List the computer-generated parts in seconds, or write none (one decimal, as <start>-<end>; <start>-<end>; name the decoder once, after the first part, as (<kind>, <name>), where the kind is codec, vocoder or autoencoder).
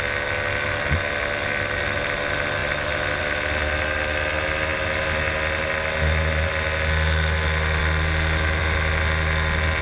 none